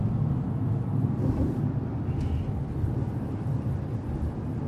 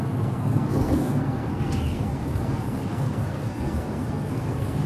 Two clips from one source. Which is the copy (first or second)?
second